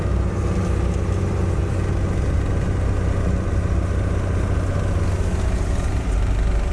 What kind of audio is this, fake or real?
real